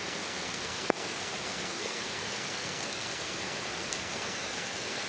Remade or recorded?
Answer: remade